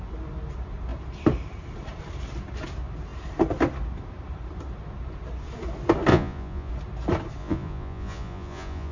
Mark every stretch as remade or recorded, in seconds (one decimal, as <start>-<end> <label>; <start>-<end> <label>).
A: 0.0-6.1 recorded; 6.1-6.7 remade; 6.7-7.4 recorded; 7.4-8.9 remade